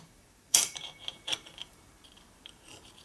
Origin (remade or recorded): remade